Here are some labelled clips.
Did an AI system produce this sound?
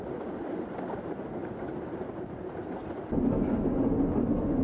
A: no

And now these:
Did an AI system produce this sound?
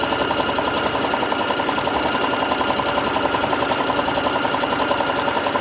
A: no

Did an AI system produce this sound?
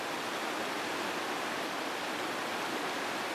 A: no